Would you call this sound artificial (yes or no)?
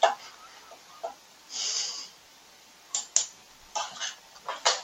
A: no